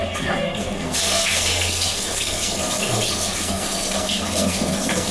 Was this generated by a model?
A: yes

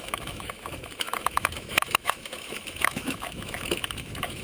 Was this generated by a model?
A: yes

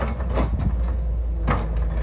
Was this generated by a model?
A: no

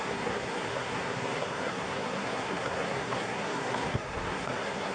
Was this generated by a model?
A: yes